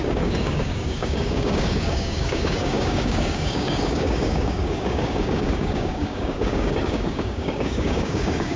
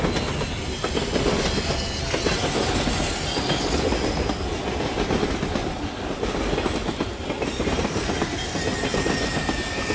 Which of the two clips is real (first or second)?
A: second